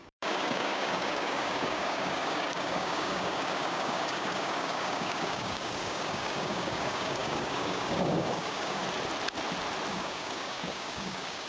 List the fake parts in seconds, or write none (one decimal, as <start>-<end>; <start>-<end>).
0.0-8.8; 9.9-11.5